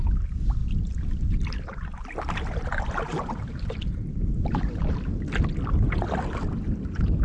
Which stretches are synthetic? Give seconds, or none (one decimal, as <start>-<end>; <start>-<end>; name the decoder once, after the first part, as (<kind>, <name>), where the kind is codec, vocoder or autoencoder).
0.6-4.9 (vocoder, BigVGAN v2)